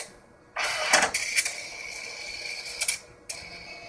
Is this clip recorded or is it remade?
recorded